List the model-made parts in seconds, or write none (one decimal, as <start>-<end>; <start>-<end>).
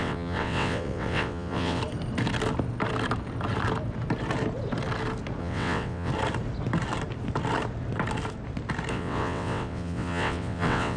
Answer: 0.0-1.8; 5.4-6.1; 8.9-11.0